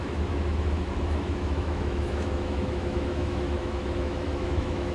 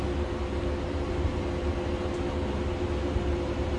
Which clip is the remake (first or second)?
first